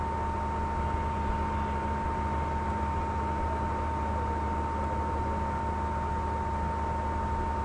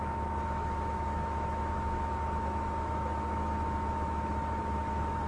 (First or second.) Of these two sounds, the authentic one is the first